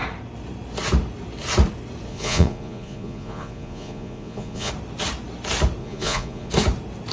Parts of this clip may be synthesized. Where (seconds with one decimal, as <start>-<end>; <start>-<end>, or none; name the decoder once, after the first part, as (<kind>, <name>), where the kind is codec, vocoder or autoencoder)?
2.1-4.7 (vocoder, Vocos); 5.8-6.5